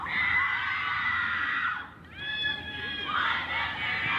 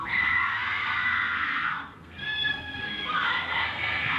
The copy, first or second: second